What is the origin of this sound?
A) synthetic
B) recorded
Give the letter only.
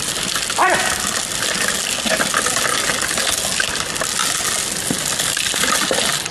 B